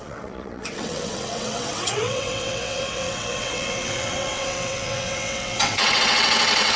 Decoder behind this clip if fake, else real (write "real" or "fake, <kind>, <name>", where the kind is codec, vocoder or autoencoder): fake, vocoder, WaveNeXt